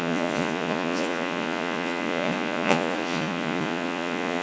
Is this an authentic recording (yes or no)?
no